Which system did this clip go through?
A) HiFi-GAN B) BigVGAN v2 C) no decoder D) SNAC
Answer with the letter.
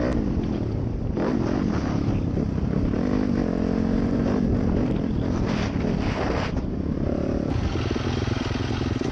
C